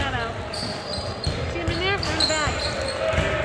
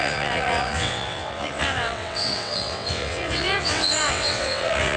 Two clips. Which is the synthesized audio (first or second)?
second